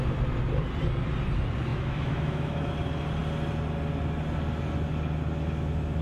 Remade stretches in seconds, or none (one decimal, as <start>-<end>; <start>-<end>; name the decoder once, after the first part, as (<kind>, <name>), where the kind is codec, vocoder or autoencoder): 1.7-2.7 (autoencoder, DAC-VAE)